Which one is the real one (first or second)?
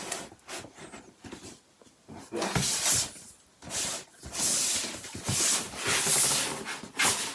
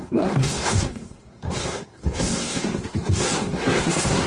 first